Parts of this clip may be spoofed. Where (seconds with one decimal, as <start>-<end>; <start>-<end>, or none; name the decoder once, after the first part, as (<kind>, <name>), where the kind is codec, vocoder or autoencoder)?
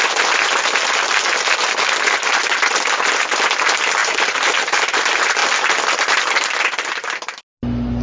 4.0-5.0 (vocoder, BigVGAN v2)